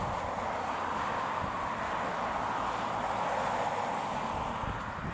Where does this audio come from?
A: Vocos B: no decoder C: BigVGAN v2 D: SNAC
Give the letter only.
B